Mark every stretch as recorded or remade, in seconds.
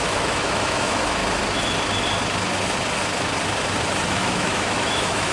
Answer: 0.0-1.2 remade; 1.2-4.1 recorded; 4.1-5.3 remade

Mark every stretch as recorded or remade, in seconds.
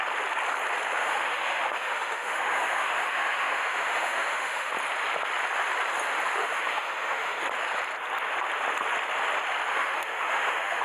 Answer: 0.0-1.0 recorded; 1.0-4.7 remade; 4.7-6.4 recorded; 6.4-7.4 remade; 7.4-9.7 recorded; 9.7-10.8 remade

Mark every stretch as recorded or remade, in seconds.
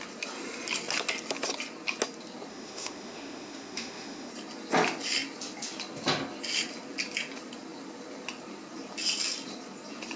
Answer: 0.0-2.5 recorded; 2.5-4.3 remade; 4.3-10.2 recorded